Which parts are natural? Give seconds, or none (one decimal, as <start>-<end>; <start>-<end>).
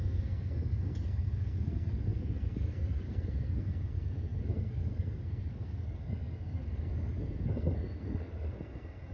none